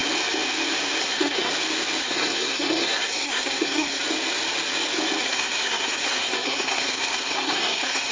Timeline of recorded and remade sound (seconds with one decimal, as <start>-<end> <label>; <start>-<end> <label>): 0.0-1.0 recorded; 1.0-1.5 remade; 1.5-2.0 recorded; 2.0-4.0 remade; 4.0-5.2 recorded; 5.2-8.1 remade